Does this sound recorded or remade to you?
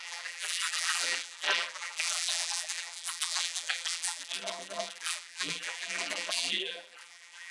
remade